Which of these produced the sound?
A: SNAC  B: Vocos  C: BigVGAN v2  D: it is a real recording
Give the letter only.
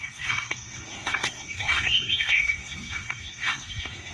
A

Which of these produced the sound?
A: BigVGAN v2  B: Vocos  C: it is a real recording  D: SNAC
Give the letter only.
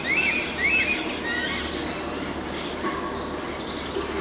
C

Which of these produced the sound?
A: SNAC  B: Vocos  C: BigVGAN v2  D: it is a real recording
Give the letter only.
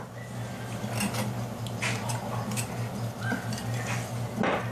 D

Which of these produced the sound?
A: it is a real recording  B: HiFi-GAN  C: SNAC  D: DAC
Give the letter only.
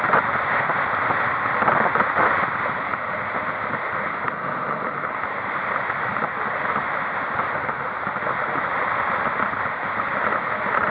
A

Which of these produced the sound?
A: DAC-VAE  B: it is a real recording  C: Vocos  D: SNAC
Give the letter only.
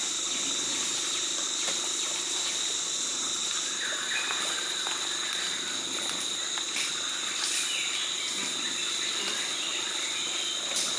B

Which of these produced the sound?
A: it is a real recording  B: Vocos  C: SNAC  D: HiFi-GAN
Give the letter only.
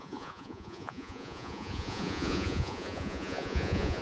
B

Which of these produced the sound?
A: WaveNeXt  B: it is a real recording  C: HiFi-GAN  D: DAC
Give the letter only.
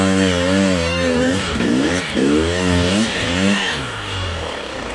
D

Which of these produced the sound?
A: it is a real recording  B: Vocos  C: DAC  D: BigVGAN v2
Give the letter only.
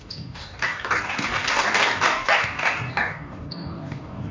C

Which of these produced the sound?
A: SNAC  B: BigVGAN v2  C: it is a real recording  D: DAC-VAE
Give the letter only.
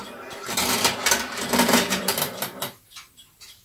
B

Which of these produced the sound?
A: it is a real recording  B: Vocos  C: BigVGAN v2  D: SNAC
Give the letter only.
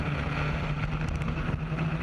A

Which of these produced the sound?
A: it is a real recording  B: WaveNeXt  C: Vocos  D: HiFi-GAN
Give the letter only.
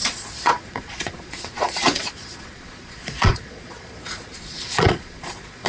C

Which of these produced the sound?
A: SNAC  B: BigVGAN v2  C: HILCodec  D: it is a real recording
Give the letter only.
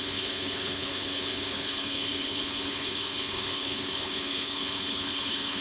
C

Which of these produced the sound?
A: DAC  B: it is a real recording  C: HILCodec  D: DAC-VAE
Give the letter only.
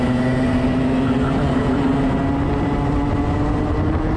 B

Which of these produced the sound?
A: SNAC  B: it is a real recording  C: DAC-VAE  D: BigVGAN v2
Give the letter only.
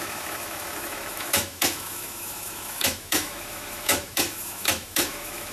C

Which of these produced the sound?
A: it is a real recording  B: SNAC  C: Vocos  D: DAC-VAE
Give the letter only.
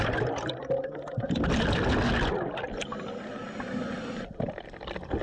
A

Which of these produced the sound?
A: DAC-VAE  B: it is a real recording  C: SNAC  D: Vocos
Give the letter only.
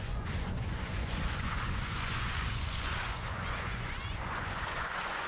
D